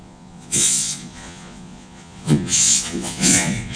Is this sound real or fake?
fake